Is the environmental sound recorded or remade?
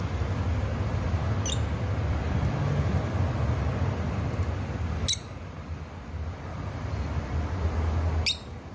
recorded